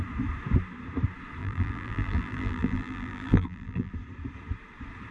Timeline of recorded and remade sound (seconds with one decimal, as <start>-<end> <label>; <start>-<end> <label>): 0.0-1.4 recorded; 1.4-3.9 remade; 3.9-5.1 recorded

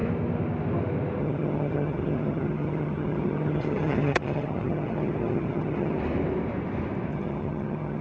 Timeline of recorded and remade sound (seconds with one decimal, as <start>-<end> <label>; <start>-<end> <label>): 0.0-1.2 recorded; 1.2-6.0 remade; 6.0-7.1 recorded; 7.1-8.0 remade

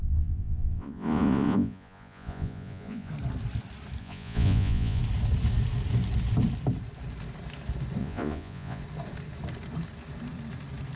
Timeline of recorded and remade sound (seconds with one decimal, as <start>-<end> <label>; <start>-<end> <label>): 0.0-3.1 remade; 3.1-4.0 recorded; 4.0-5.0 remade; 5.0-8.0 recorded; 8.0-8.8 remade; 8.8-11.0 recorded

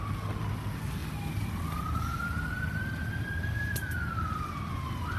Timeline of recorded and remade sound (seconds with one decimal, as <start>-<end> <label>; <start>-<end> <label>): 0.0-1.0 recorded; 1.0-4.1 remade; 4.1-5.2 recorded